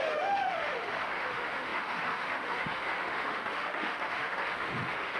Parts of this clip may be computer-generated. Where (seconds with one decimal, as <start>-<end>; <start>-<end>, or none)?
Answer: 0.0-5.2